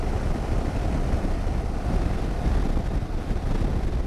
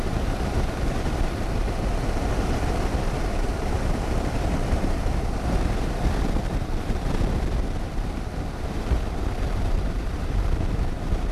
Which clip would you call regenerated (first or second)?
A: second